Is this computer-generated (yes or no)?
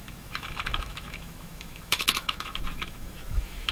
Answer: yes